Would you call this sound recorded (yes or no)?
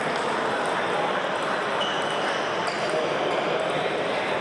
yes